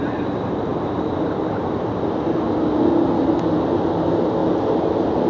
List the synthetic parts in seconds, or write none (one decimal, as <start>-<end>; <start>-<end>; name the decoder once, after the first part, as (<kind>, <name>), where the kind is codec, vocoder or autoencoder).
none

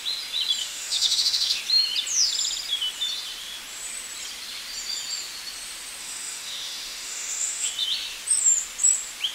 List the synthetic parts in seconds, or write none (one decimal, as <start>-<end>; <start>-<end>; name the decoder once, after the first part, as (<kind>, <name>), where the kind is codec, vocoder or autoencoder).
0.6-1.6 (autoencoder, DAC-VAE); 6.0-7.7

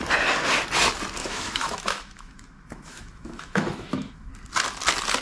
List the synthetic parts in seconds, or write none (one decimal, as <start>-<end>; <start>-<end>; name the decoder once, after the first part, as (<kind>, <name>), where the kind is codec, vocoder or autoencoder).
1.2-4.3 (autoencoder, DAC-VAE)

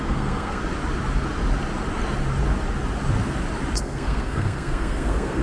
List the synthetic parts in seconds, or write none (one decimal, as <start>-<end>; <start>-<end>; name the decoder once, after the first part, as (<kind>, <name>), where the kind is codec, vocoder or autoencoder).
0.0-0.6 (codec, SNAC); 3.8-5.4